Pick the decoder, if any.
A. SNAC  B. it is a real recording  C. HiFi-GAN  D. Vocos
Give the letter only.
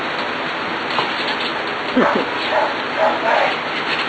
B